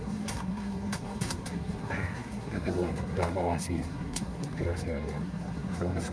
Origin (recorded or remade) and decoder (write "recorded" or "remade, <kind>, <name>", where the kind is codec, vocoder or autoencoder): remade, codec, SNAC